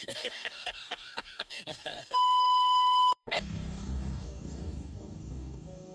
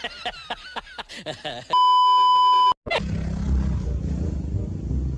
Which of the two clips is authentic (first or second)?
second